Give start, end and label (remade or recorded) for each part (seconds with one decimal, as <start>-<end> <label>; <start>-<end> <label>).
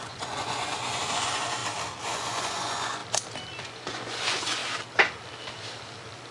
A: 0.0-1.6 remade; 1.6-2.1 recorded; 2.1-3.0 remade; 3.0-3.6 recorded; 3.6-4.6 remade; 4.6-6.3 recorded